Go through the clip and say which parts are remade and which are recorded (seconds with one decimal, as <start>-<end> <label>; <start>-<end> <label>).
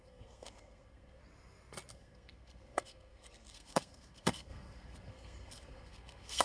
0.0-1.2 remade; 1.2-1.9 recorded; 1.9-6.4 remade